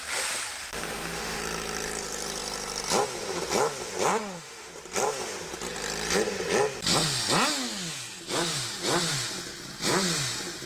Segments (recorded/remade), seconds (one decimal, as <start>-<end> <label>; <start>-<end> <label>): 0.0-0.6 recorded; 0.6-1.4 remade; 1.4-4.1 recorded; 4.1-4.7 remade; 4.7-10.7 recorded